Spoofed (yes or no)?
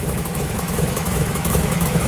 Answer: yes